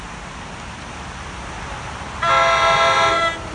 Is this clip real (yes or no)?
yes